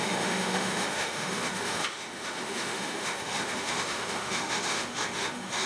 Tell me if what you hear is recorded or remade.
remade